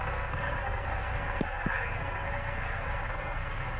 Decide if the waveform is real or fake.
fake